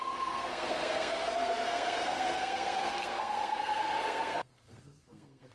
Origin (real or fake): fake